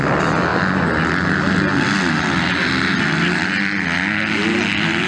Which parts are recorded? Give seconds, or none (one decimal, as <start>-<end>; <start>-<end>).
0.0-5.1